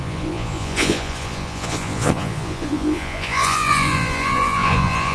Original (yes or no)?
no